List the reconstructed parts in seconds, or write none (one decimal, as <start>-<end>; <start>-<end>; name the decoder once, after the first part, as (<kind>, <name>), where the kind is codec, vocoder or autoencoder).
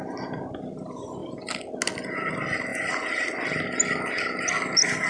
none